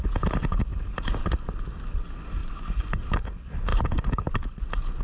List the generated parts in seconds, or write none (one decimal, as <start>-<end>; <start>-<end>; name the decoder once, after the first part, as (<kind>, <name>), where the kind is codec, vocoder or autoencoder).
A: 0.7-1.2 (vocoder, BigVGAN v2); 2.4-3.1